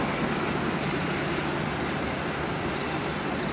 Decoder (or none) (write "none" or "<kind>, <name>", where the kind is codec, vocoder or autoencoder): none